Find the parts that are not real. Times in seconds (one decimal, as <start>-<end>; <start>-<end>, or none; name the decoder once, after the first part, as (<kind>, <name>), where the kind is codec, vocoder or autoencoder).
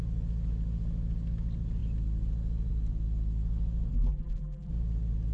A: 3.9-4.7 (vocoder, BigVGAN v2)